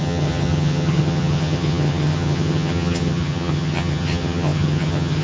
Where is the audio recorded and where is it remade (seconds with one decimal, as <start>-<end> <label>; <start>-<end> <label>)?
0.0-5.2 remade